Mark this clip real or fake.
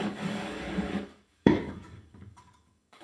fake